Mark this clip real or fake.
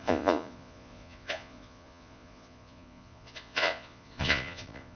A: fake